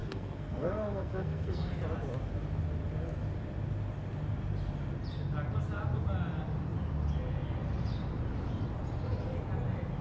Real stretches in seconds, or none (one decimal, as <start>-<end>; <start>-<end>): 1.7-10.0

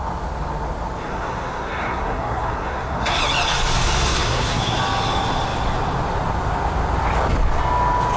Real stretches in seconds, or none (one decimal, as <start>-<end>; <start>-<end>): 0.0-1.0; 3.2-4.1; 4.8-8.2

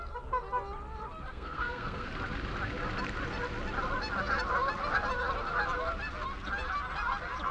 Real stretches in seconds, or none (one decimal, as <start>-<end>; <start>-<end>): 0.0-1.3; 2.1-7.5

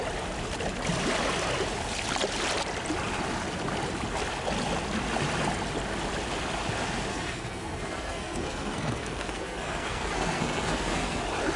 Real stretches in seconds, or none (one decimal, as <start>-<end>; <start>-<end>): 0.0-7.1; 11.2-11.6

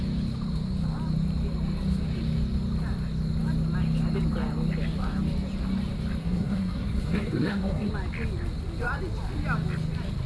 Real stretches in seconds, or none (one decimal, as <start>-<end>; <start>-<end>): 0.0-6.2; 7.9-10.3

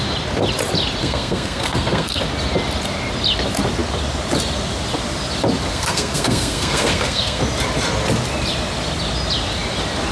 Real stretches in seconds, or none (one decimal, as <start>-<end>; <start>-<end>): 0.0-1.0; 2.2-5.7; 7.4-10.1

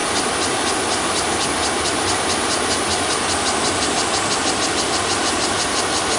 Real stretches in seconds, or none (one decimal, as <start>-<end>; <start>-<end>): 0.0-6.2